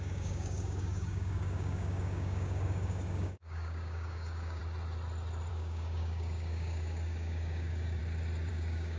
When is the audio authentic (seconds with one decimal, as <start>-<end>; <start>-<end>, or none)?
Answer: 4.6-5.5; 8.0-8.5